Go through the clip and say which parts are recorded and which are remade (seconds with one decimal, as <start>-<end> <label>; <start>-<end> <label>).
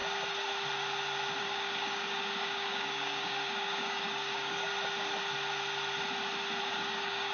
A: 0.0-1.4 recorded; 1.4-4.7 remade; 4.7-6.6 recorded; 6.6-7.3 remade